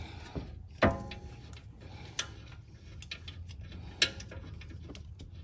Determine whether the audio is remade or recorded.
recorded